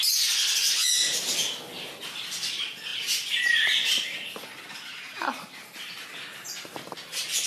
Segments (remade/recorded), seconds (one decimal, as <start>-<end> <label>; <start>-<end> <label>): 0.0-7.5 recorded